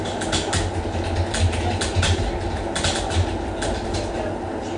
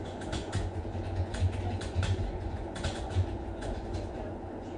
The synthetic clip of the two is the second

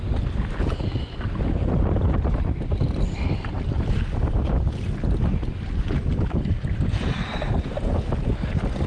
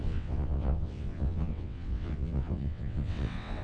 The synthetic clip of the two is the second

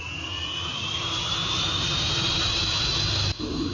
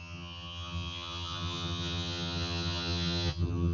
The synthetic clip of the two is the second